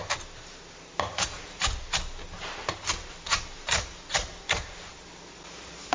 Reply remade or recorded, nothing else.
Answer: recorded